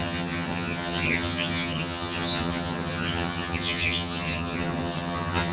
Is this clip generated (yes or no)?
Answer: yes